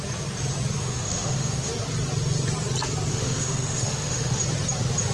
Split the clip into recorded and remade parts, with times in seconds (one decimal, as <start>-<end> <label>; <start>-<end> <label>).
0.0-0.8 recorded; 0.8-1.7 remade; 1.7-3.1 recorded; 3.1-4.4 remade; 4.4-5.1 recorded